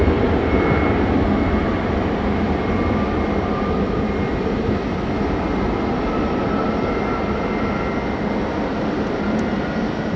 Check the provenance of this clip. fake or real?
real